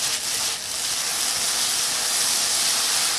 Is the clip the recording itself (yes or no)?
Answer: yes